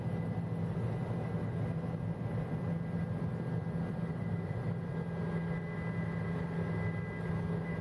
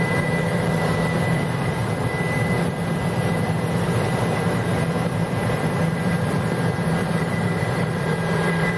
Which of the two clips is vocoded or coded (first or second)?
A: second